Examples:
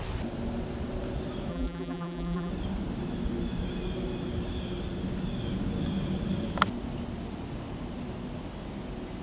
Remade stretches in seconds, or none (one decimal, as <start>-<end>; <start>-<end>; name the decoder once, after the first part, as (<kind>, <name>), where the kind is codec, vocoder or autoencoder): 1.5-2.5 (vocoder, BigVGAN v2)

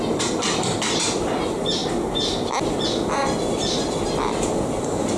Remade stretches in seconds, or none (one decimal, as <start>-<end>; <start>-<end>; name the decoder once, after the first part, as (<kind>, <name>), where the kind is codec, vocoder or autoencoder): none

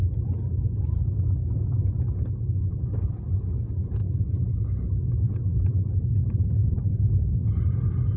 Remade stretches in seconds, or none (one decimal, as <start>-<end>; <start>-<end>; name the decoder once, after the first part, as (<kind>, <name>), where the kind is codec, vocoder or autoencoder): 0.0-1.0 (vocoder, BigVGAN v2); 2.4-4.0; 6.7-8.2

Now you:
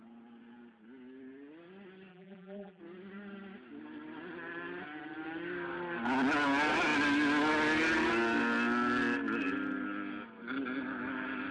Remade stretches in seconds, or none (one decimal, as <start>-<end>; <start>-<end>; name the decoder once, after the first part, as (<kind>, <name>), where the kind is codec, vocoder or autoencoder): 2.1-2.8 (vocoder, BigVGAN v2)